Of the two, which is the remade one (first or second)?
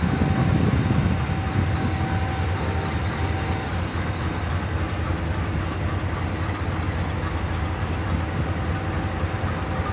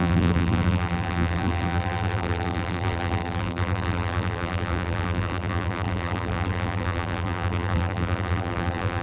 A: second